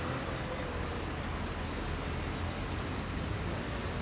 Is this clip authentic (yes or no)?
yes